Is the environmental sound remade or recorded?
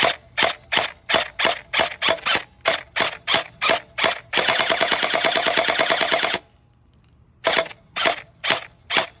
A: recorded